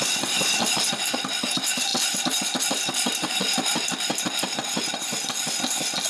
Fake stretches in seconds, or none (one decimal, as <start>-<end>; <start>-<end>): none